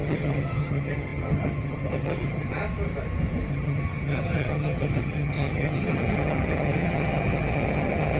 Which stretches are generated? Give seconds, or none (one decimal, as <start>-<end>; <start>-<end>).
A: 0.0-2.6; 3.5-8.2